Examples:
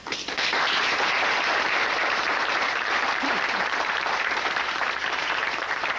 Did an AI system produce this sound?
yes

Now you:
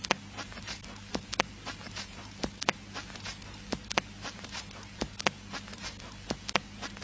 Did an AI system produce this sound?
no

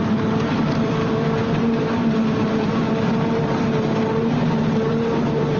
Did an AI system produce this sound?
yes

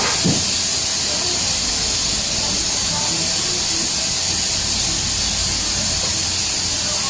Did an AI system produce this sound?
no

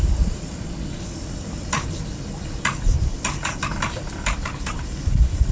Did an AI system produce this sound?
no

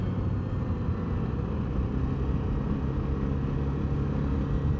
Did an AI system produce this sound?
no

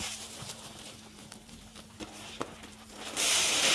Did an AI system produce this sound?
yes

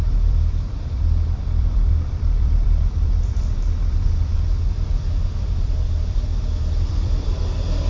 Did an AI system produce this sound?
yes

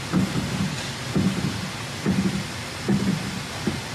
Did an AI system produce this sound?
no